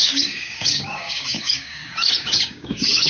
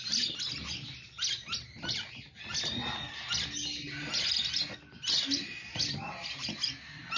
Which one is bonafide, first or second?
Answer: second